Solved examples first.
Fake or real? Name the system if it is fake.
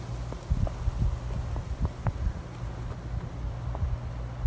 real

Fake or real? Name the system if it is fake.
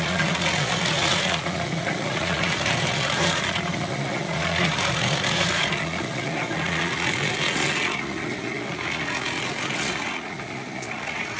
fake, vocoder, Vocos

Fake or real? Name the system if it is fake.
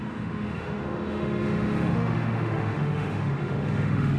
fake, autoencoder, DAC-VAE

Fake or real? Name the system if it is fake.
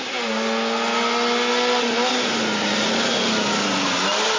real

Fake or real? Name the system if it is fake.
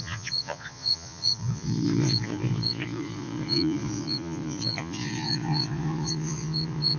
fake, vocoder, Vocos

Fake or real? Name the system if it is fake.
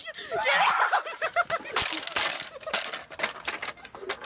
real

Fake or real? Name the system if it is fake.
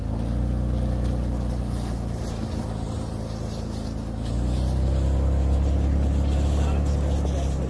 real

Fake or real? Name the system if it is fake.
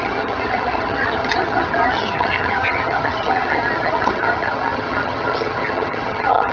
fake, vocoder, HiFi-GAN